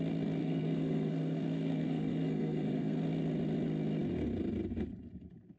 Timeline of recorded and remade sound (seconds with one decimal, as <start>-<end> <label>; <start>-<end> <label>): 0.0-0.4 recorded; 0.4-3.0 remade; 3.0-5.6 recorded